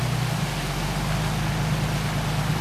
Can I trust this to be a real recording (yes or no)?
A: yes